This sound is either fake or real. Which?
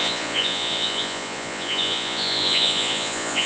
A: fake